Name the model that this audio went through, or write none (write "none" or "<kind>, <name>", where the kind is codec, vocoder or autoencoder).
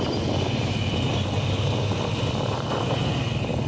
none